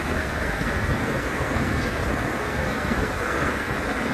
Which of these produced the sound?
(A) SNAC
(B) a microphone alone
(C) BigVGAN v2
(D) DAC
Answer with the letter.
A